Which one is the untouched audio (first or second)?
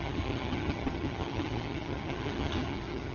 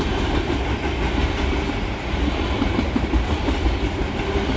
second